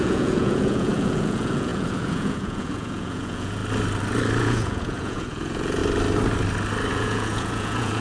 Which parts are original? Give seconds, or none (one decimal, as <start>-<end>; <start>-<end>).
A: 3.6-4.4; 5.8-6.9